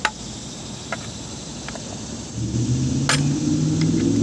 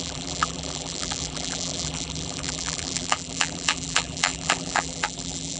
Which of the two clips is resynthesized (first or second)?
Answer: second